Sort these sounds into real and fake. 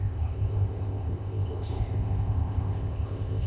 fake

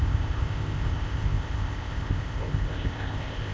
fake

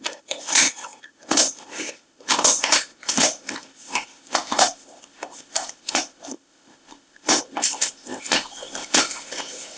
fake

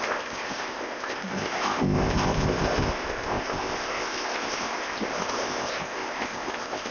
fake